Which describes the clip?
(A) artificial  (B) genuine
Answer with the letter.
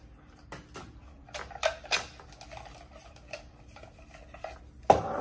B